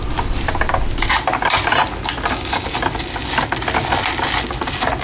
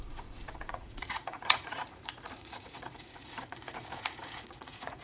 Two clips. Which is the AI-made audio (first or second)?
second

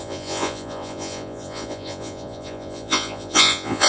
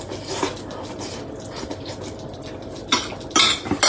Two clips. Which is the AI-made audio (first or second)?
first